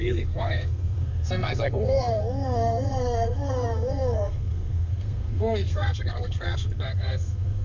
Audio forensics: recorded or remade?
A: remade